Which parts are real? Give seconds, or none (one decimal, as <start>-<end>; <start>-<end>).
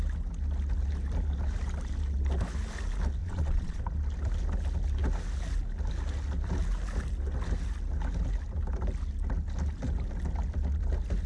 0.0-3.2; 3.8-11.3